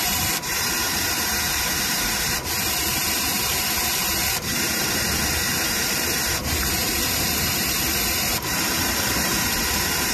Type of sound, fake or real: fake